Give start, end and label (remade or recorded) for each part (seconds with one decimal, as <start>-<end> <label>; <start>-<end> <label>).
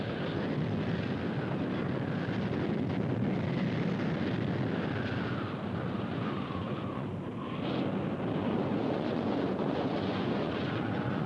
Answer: 0.0-6.1 recorded; 6.1-7.1 remade; 7.1-8.4 recorded; 8.4-11.3 remade